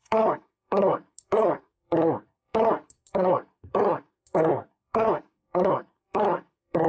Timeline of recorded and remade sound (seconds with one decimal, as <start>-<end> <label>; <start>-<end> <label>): 0.0-6.9 remade